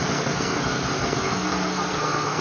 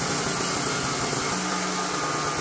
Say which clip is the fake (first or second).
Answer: first